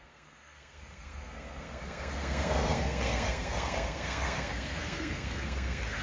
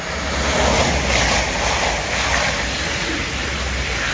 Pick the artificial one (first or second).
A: first